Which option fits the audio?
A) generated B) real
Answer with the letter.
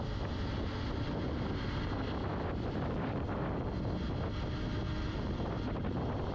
B